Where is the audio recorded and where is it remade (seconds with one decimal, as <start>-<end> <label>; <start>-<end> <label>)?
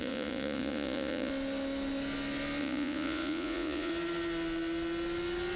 0.0-1.3 remade; 1.3-2.6 recorded; 2.6-3.9 remade; 3.9-5.6 recorded